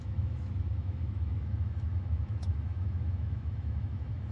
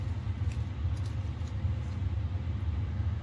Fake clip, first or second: first